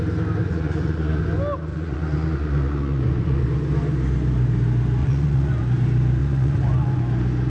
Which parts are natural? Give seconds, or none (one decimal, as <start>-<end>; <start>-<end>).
0.0-0.4; 1.2-1.7; 3.4-5.0; 5.6-6.2; 7.0-7.5